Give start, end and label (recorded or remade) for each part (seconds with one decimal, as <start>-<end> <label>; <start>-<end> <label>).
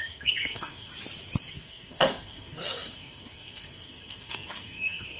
0.0-0.9 remade; 0.9-1.5 recorded; 1.5-5.2 remade